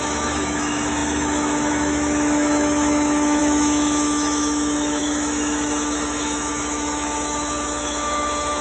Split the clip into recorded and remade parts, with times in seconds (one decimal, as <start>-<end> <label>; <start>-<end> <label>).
0.0-8.6 remade